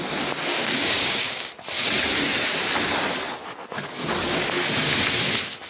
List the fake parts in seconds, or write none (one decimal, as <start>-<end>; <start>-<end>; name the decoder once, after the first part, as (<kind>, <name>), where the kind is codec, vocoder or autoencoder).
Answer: 0.5-1.5 (codec, DAC)